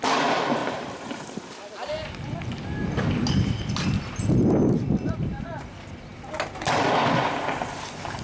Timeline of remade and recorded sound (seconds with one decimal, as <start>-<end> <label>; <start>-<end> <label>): 0.0-8.2 recorded